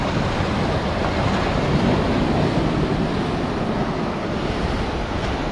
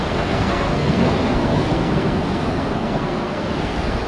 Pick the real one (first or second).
first